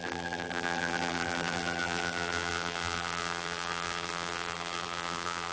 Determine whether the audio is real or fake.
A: fake